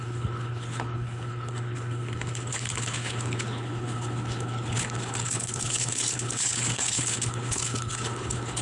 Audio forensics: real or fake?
fake